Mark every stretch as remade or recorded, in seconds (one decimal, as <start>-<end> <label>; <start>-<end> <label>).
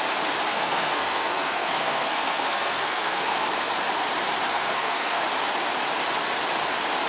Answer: 0.0-0.5 recorded; 0.5-3.7 remade; 3.7-4.5 recorded; 4.5-5.2 remade; 5.2-7.1 recorded